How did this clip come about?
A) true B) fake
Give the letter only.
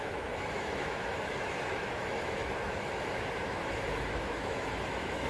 B